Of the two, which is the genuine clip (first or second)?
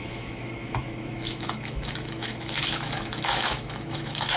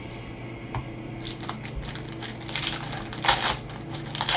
second